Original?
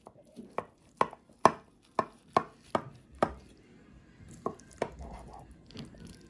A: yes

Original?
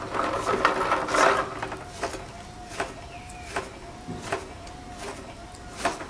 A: yes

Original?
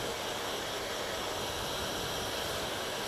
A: yes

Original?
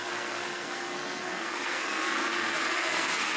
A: no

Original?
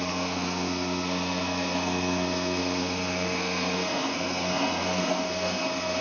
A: no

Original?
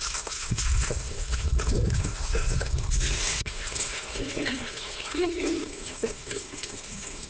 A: no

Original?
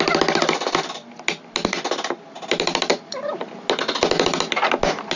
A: yes